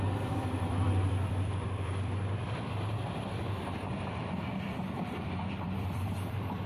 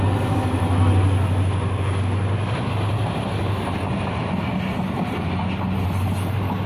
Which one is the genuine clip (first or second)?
second